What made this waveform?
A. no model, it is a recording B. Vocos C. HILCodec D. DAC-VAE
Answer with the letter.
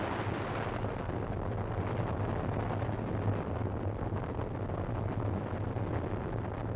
A